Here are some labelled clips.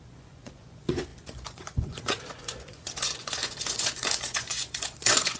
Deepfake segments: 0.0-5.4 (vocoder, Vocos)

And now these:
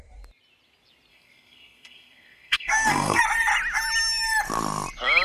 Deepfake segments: 1.1-3.2 (codec, SNAC)

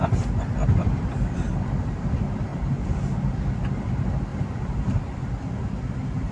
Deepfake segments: none

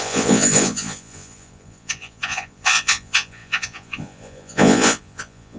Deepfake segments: 0.0-5.6 (vocoder, Vocos)

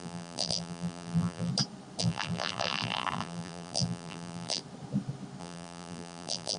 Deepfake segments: 0.0-1.5 (vocoder, BigVGAN v2); 2.0-4.6; 5.4-6.6